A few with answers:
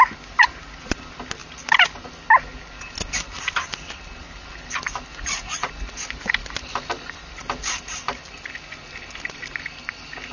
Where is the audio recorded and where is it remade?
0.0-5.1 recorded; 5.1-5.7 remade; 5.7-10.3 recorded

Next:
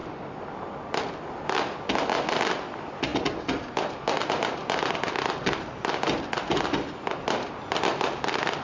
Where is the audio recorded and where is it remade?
0.0-8.6 recorded

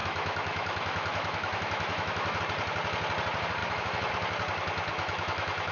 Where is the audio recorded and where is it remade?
0.0-2.4 remade; 2.4-3.6 recorded; 3.6-4.1 remade; 4.1-4.9 recorded; 4.9-5.7 remade

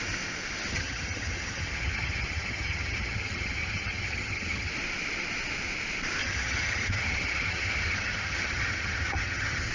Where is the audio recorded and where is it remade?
0.0-0.7 recorded; 0.7-4.7 remade; 4.7-6.2 recorded; 6.2-9.7 remade

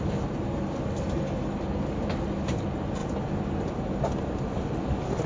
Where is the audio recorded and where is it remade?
0.0-5.3 recorded

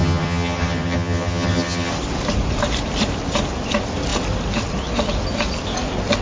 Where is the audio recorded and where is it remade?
0.0-1.9 remade; 1.9-6.2 recorded

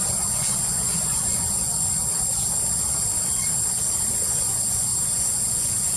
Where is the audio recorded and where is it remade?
0.0-1.7 remade; 1.7-4.1 recorded; 4.1-6.0 remade